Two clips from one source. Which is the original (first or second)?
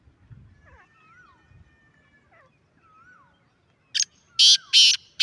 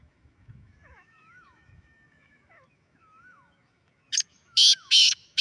first